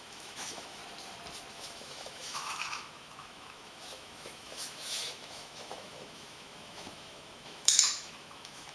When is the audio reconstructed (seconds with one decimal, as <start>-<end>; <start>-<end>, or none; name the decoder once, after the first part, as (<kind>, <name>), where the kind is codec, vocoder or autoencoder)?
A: 0.0-0.8 (autoencoder, DAC-VAE); 1.5-8.7